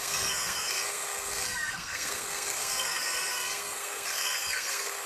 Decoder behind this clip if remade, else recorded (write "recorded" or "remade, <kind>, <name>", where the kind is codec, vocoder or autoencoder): remade, codec, SNAC